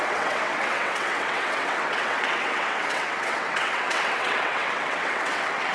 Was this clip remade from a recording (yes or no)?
yes